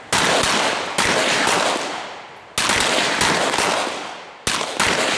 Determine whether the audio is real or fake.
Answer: real